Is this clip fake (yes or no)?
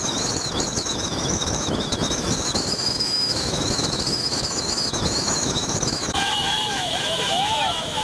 yes